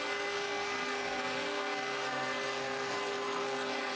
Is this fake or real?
fake